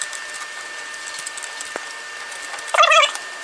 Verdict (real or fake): real